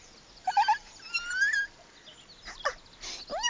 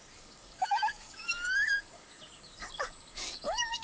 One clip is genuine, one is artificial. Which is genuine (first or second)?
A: first